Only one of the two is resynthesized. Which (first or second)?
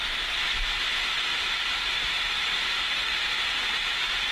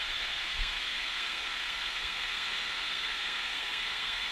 second